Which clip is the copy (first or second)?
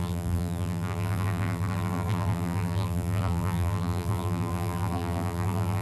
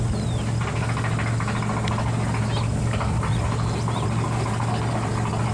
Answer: first